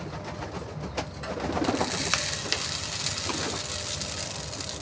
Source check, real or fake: real